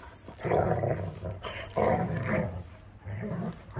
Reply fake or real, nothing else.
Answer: real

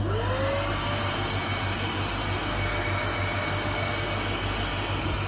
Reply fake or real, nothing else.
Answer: real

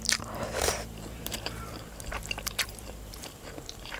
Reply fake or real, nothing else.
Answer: fake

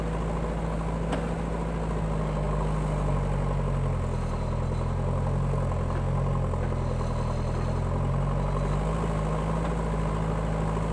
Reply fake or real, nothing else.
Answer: real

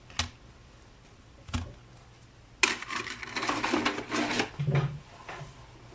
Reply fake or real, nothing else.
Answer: real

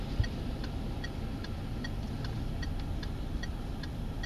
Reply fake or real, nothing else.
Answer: fake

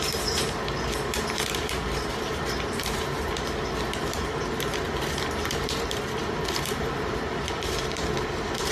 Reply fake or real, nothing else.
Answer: fake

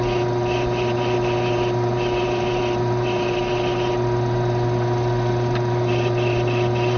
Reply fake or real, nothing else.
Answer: real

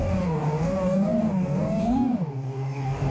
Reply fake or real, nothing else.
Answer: fake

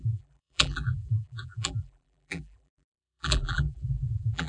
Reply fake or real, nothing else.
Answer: fake